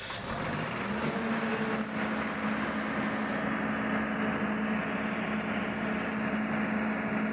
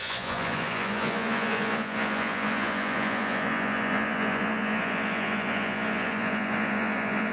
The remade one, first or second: second